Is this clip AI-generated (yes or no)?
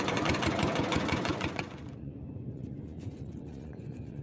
yes